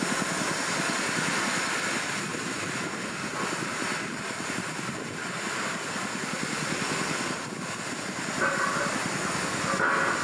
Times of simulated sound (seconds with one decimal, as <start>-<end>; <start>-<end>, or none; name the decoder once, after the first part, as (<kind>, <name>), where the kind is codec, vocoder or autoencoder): 2.3-6.2 (vocoder, BigVGAN v2)